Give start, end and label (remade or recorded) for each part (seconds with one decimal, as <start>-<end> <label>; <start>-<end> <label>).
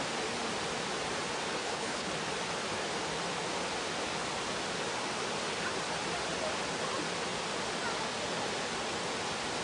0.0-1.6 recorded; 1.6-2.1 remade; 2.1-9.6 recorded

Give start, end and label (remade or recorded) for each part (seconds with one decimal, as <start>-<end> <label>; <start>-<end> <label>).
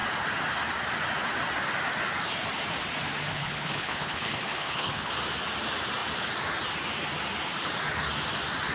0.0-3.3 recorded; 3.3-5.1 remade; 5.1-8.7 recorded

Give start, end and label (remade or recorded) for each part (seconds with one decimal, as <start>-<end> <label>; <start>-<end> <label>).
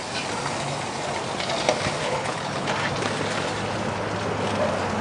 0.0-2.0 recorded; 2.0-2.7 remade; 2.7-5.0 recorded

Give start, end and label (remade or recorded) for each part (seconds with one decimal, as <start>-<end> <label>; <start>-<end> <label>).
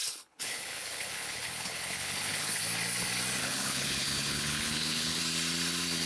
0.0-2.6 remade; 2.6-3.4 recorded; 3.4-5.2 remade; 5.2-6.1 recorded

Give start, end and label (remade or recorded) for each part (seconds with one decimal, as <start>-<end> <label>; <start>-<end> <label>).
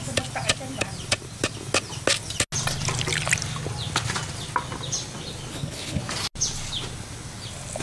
0.0-5.5 recorded; 5.5-6.0 remade; 6.0-7.8 recorded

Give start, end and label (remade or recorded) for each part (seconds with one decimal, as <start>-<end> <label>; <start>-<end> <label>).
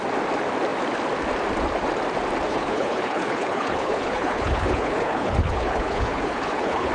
0.0-2.5 recorded; 2.5-6.9 remade